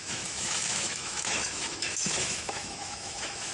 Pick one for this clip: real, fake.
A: fake